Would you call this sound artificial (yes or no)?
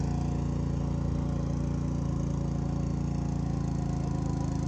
no